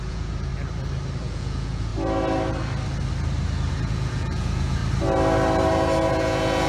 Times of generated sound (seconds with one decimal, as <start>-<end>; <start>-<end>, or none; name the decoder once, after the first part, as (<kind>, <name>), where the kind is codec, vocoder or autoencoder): 0.0-0.5 (vocoder, Vocos); 1.2-1.9; 3.7-4.8; 6.1-6.7